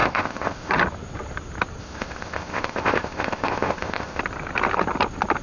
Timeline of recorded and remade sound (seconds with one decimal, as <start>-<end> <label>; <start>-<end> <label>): 0.0-0.7 remade; 0.7-1.8 recorded; 1.8-4.2 remade; 4.2-5.4 recorded